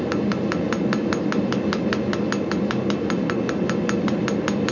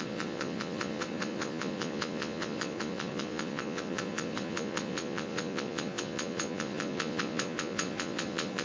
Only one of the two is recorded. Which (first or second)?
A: first